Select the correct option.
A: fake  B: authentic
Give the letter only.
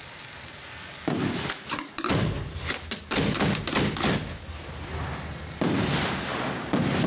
B